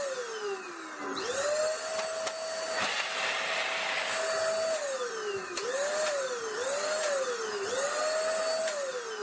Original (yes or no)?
yes